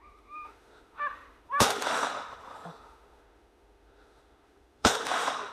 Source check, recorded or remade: remade